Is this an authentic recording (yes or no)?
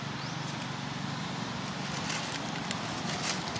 yes